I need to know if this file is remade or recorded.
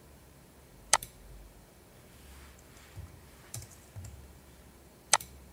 remade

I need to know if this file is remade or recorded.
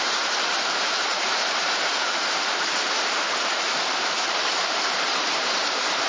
remade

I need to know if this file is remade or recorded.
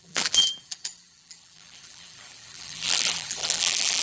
remade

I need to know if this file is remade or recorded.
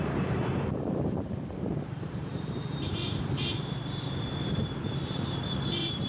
remade